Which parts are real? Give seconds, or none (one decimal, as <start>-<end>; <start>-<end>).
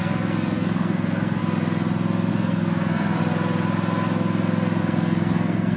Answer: 1.4-2.3; 3.2-4.8